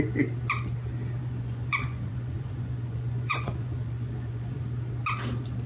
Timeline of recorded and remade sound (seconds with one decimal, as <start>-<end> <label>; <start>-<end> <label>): 0.0-1.2 recorded; 1.2-4.6 remade; 4.6-5.7 recorded

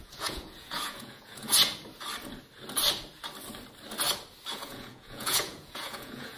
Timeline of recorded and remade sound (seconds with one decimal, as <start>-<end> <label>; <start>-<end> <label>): 0.0-1.4 remade; 1.4-4.5 recorded; 4.5-6.4 remade

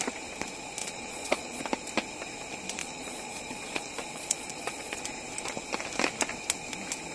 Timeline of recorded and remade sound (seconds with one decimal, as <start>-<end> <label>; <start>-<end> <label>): 0.0-0.8 recorded; 0.8-1.6 remade; 1.6-2.8 recorded; 2.8-5.0 remade; 5.0-7.1 recorded

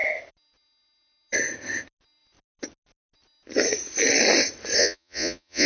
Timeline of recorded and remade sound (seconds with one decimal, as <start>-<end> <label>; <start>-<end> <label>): 0.0-4.8 recorded; 4.8-5.7 remade

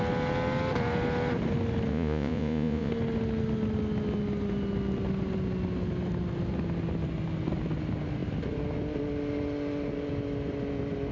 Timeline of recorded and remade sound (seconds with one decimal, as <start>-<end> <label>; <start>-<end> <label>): 0.0-1.9 recorded; 1.9-2.9 remade; 2.9-11.1 recorded

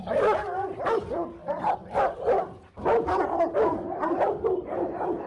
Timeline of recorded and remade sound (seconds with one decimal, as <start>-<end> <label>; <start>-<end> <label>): 0.0-5.3 recorded

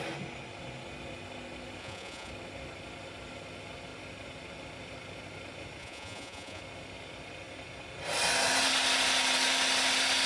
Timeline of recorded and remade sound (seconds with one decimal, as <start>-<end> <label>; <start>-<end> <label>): 0.0-1.8 recorded; 1.8-2.3 remade; 2.3-5.8 recorded; 5.8-6.6 remade; 6.6-10.3 recorded

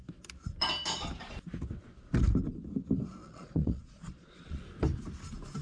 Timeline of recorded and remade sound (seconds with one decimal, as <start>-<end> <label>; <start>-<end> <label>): 0.0-3.2 recorded; 3.2-4.6 remade; 4.6-5.6 recorded